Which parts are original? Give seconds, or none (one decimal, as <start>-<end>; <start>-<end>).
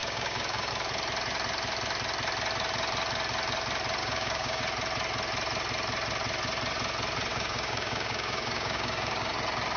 0.7-4.0; 4.6-7.3; 9.3-9.8